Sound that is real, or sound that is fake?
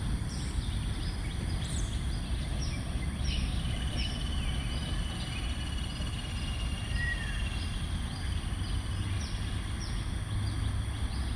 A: real